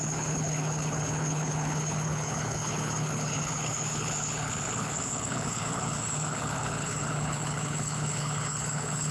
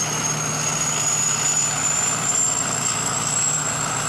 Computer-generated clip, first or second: first